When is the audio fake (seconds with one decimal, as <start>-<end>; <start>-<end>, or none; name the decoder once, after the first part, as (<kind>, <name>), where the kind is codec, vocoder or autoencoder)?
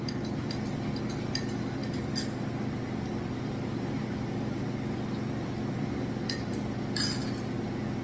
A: none